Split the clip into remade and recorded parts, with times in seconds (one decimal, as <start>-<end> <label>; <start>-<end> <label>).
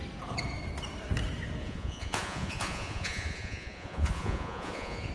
0.0-1.6 recorded; 1.6-5.1 remade